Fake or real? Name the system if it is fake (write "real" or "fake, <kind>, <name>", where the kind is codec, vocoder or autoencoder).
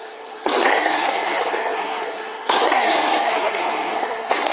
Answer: fake, codec, SNAC